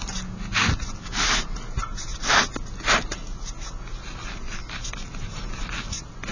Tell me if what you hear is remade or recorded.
recorded